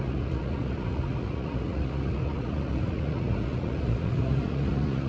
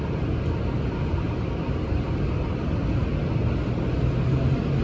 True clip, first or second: second